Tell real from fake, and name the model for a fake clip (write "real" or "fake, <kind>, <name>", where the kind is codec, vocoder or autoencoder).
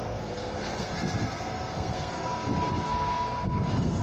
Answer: fake, codec, SNAC